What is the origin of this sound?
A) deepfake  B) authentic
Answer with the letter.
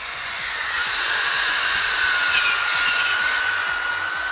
A